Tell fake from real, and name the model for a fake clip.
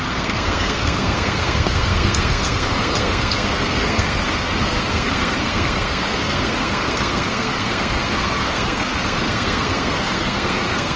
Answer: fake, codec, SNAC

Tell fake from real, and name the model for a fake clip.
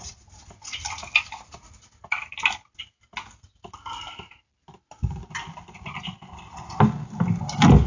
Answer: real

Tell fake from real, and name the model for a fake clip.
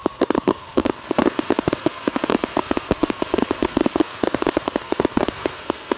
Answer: fake, codec, SNAC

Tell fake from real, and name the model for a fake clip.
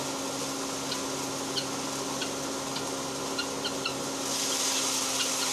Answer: real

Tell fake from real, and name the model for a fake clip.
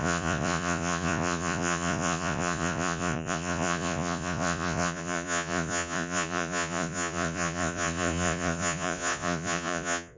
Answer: fake, vocoder, Vocos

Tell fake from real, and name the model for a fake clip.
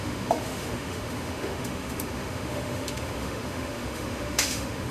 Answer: fake, autoencoder, DAC-VAE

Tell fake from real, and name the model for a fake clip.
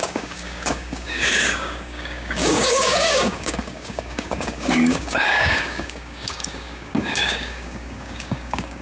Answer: fake, codec, DAC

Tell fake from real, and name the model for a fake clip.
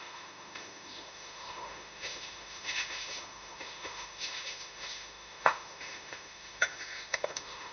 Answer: fake, autoencoder, DAC-VAE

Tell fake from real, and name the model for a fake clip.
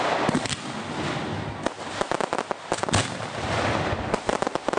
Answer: real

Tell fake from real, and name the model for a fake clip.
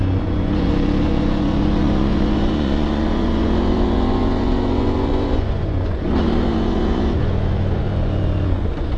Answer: fake, vocoder, Vocos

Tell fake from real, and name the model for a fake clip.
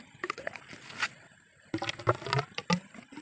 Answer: real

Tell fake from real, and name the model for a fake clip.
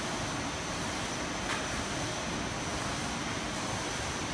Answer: real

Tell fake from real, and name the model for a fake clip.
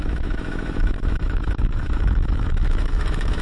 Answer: fake, autoencoder, DAC-VAE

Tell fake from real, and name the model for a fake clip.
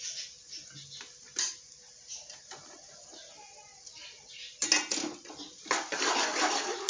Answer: real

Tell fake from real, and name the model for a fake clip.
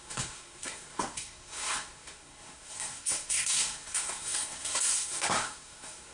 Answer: fake, codec, SNAC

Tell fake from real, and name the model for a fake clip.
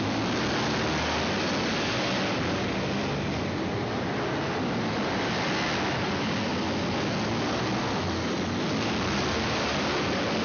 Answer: real